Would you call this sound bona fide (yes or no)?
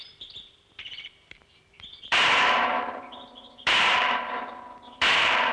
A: no